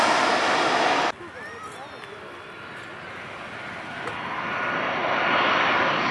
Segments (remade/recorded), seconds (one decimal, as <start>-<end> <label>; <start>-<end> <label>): 0.0-6.1 recorded